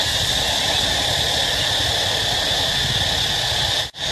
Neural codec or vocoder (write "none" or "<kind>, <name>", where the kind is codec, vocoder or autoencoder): none